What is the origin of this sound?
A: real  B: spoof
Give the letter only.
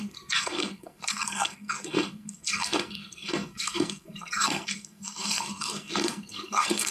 B